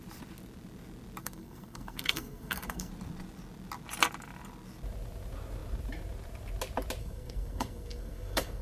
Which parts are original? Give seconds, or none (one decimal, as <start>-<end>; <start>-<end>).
0.0-1.2; 2.9-7.0